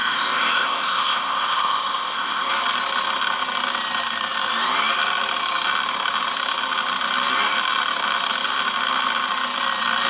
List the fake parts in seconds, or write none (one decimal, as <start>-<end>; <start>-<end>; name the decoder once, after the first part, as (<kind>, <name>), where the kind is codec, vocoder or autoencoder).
0.0-2.5 (codec, ZipCodec)

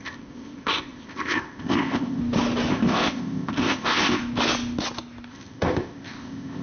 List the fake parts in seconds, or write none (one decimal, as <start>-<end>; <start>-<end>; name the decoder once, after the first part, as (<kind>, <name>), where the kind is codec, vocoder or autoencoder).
0.0-2.2 (codec, ZipCodec); 2.7-4.2; 5.3-6.6

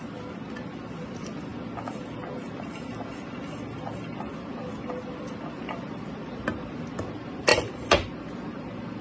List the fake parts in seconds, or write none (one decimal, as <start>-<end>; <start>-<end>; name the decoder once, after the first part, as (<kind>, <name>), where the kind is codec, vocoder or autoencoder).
none